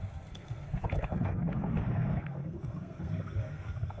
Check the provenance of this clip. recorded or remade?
remade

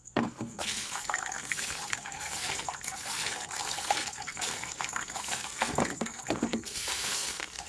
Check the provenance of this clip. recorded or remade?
remade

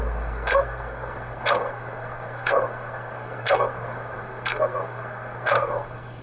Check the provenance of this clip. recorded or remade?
remade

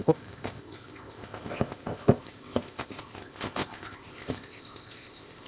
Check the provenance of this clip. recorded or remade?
remade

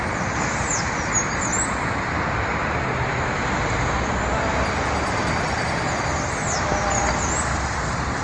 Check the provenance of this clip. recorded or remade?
recorded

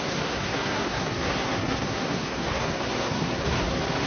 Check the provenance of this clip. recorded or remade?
remade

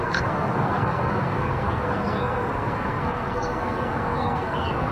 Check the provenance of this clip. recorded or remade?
remade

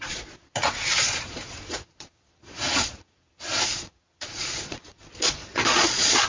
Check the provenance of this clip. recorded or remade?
remade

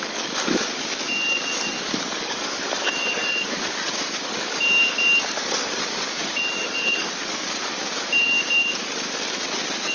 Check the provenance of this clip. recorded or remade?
remade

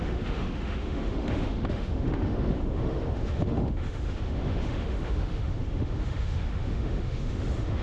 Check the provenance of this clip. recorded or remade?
remade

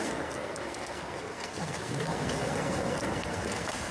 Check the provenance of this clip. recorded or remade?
remade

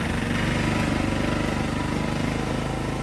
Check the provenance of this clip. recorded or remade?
recorded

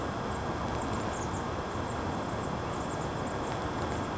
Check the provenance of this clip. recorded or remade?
recorded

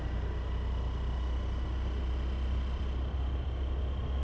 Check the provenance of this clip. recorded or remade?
recorded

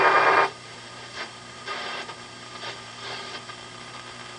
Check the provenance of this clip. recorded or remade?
remade